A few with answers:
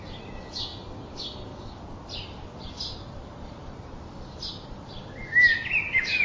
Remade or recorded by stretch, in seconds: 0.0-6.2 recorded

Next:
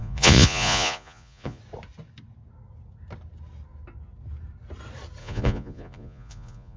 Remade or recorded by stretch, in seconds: 0.0-1.6 remade; 1.6-5.2 recorded; 5.2-6.8 remade

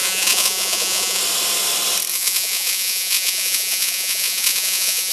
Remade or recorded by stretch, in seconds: 0.0-1.2 remade; 1.2-2.1 recorded; 2.1-5.1 remade

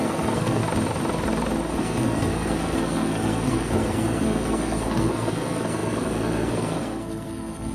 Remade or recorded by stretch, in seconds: 0.0-0.6 remade; 0.6-1.8 recorded; 1.8-7.7 remade

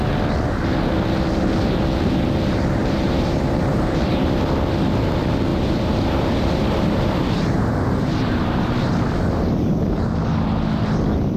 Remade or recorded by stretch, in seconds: 0.0-2.8 recorded; 2.8-4.3 remade; 4.3-5.5 recorded; 5.5-8.7 remade; 8.7-11.4 recorded

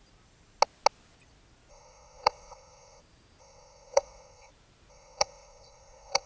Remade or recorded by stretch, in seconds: 0.0-1.7 recorded; 1.7-3.0 remade; 3.0-3.4 recorded; 3.4-4.5 remade; 4.5-4.9 recorded; 4.9-6.3 remade

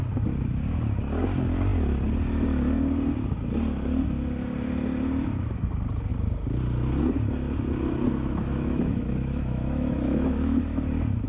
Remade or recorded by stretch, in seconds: 0.0-8.1 recorded; 8.1-10.6 remade; 10.6-11.3 recorded